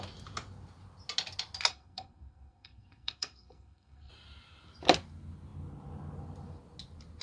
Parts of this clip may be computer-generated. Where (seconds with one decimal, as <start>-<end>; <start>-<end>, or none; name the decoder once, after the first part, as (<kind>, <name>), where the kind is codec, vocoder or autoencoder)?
1.7-4.1 (codec, SNAC)